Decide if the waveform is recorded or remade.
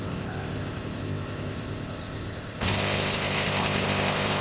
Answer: remade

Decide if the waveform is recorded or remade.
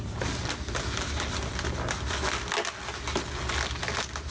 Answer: recorded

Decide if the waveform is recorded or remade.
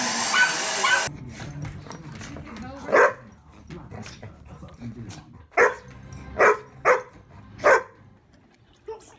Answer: recorded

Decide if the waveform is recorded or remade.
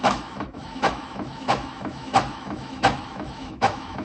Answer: remade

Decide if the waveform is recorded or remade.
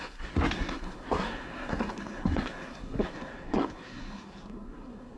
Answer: remade